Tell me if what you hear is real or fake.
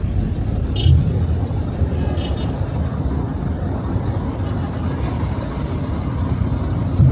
real